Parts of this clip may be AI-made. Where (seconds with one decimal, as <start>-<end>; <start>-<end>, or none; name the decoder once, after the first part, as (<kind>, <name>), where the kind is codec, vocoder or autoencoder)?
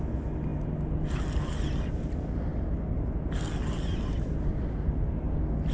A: none